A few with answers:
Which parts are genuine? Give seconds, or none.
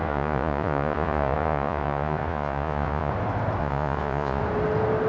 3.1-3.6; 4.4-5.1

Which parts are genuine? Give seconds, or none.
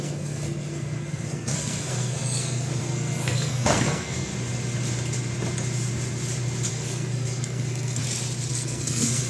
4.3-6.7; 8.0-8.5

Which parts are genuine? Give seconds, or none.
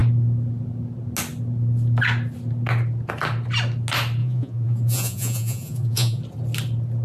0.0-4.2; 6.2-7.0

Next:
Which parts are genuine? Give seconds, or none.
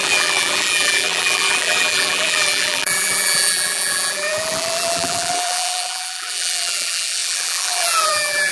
none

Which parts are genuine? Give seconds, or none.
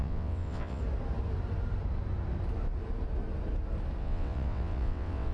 0.8-4.0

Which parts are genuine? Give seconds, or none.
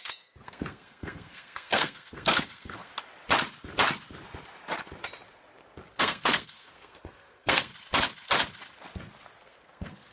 2.9-6.0; 7.7-9.4